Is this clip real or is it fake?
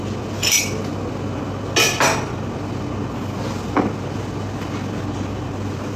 real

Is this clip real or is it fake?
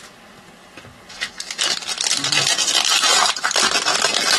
real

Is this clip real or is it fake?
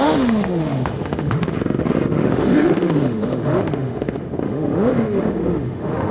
fake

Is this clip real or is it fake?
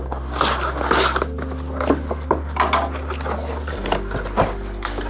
real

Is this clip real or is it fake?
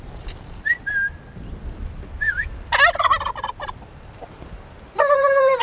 real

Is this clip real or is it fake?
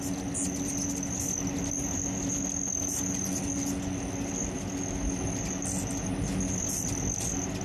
real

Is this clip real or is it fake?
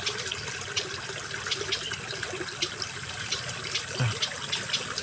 real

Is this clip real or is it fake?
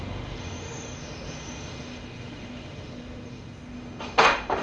fake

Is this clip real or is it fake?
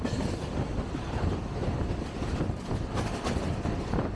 real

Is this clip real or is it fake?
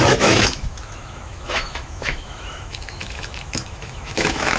fake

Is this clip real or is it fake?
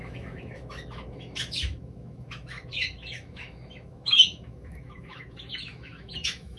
fake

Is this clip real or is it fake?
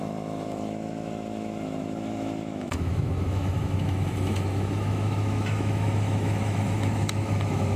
fake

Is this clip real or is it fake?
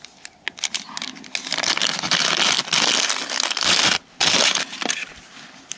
real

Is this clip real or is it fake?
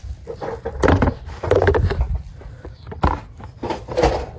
real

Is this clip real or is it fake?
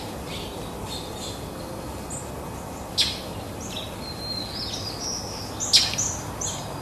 real